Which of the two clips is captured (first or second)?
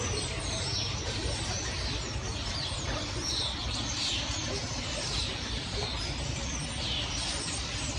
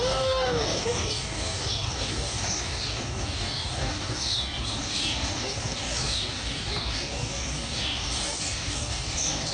first